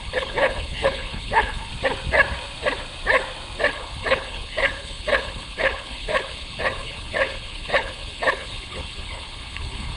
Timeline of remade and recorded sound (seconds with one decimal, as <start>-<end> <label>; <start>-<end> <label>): 0.0-1.7 remade; 1.7-3.7 recorded; 3.7-10.0 remade